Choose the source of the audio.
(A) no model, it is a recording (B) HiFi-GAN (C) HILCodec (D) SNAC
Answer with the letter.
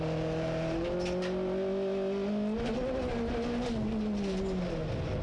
A